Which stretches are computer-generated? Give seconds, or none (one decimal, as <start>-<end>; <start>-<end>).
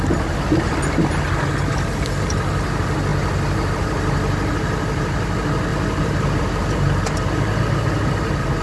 5.7-7.6